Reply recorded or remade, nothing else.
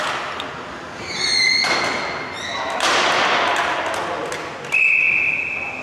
recorded